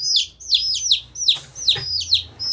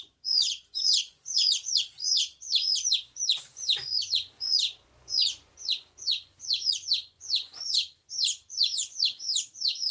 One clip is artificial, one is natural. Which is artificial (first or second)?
second